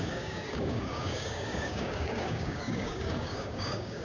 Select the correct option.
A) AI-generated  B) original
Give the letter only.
A